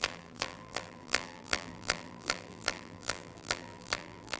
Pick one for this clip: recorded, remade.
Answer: remade